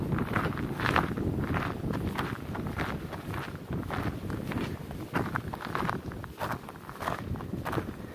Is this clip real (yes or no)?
yes